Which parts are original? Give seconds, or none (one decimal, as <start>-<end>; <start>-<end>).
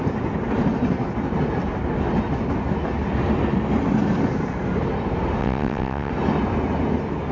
0.0-5.4; 6.1-7.3